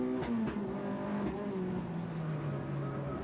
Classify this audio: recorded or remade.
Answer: recorded